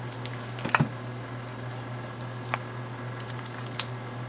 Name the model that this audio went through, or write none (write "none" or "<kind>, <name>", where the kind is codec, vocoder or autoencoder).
none